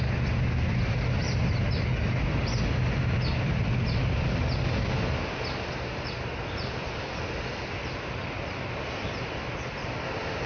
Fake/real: real